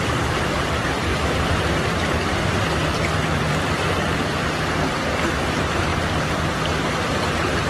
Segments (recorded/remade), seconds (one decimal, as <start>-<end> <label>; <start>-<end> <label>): 0.0-5.9 remade; 5.9-7.0 recorded; 7.0-7.7 remade